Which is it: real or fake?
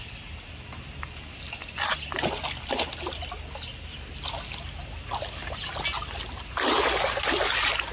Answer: real